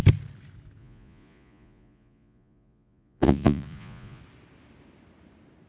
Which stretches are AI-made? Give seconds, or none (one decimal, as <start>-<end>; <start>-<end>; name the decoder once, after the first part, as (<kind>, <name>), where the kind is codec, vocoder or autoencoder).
0.8-4.2 (vocoder, Vocos)